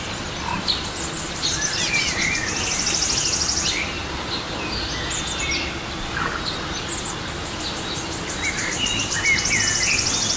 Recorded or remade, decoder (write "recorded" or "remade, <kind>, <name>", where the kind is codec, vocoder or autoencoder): recorded